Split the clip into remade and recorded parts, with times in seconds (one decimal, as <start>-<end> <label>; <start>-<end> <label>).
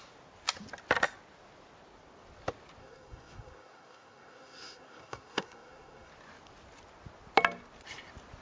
0.0-2.8 recorded; 2.8-6.1 remade; 6.1-8.4 recorded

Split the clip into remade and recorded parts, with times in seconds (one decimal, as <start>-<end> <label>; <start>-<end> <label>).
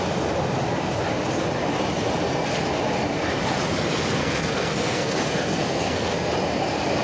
0.0-4.2 recorded; 4.2-6.3 remade; 6.3-7.0 recorded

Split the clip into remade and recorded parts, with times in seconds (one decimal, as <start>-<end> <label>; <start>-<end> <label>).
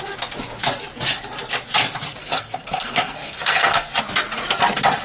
0.0-2.2 recorded; 2.2-3.9 remade; 3.9-5.0 recorded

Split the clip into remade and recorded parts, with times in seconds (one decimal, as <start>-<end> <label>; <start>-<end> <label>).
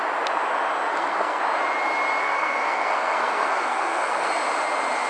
0.0-0.9 recorded; 0.9-1.4 remade; 1.4-2.2 recorded; 2.2-4.3 remade; 4.3-5.1 recorded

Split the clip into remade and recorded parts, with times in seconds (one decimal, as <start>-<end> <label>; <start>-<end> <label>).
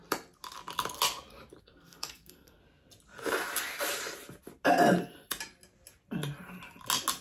0.0-1.6 recorded; 1.6-2.6 remade; 2.6-7.2 recorded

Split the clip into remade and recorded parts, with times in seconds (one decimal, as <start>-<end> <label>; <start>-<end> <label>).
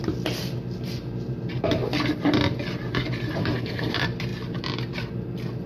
0.0-3.4 recorded; 3.4-3.9 remade; 3.9-5.7 recorded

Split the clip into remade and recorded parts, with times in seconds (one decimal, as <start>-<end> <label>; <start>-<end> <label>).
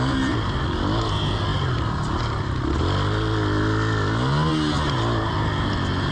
0.0-6.1 recorded